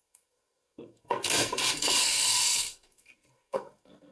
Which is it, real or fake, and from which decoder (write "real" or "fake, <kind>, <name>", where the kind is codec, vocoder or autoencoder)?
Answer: fake, codec, SNAC